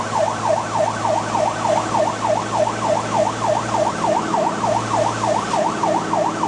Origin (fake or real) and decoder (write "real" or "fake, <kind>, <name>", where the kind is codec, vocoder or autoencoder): real